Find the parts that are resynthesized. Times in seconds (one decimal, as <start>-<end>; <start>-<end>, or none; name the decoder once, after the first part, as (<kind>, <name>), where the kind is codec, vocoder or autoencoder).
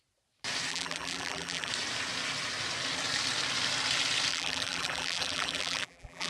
0.7-1.7 (vocoder, BigVGAN v2); 4.3-6.3